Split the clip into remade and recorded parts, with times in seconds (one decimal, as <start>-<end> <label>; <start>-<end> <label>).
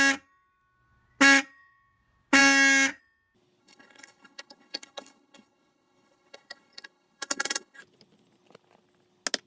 0.0-3.6 recorded; 3.6-7.8 remade; 7.8-9.5 recorded